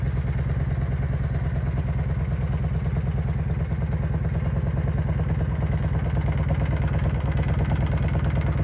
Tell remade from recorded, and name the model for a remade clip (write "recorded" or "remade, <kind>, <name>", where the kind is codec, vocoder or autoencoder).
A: recorded